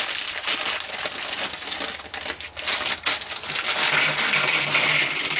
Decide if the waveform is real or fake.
real